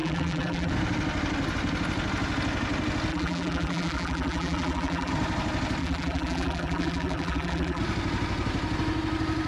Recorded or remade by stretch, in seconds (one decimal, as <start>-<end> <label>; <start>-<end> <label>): 0.0-0.7 remade; 0.7-3.1 recorded; 3.1-5.1 remade; 5.1-5.8 recorded; 5.8-7.8 remade; 7.8-9.5 recorded